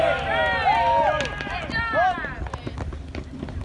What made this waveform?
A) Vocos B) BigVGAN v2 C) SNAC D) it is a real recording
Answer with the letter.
D